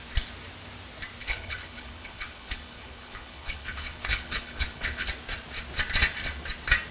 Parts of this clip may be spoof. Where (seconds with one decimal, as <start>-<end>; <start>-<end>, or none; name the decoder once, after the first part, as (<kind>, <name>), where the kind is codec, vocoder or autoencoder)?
1.2-5.1 (codec, HILCodec)